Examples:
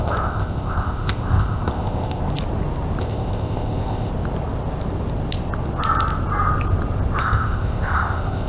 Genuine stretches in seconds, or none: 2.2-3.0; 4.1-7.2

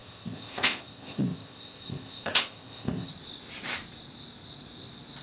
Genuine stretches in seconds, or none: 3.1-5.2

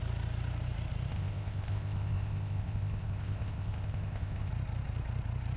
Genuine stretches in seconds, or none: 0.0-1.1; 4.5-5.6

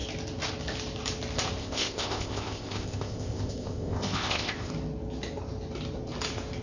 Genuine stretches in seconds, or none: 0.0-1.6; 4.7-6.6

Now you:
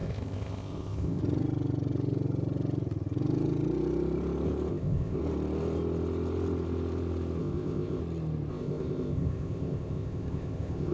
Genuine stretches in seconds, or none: 1.2-4.7; 5.2-7.4; 8.0-8.5

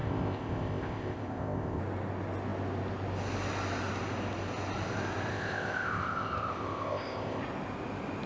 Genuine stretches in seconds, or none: 1.8-5.3; 7.4-8.3

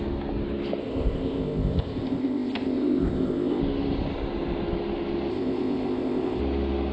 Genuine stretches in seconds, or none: 0.0-0.8; 3.6-5.3; 6.4-6.9

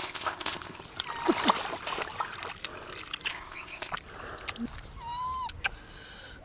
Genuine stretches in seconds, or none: 0.8-3.3; 3.9-6.4